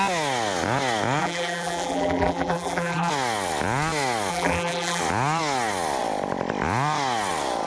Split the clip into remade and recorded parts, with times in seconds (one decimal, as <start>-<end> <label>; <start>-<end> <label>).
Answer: 0.0-1.2 recorded; 1.2-3.1 remade; 3.1-4.3 recorded; 4.3-5.0 remade; 5.0-7.7 recorded